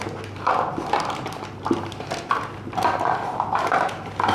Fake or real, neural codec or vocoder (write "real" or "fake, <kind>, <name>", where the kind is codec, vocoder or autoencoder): real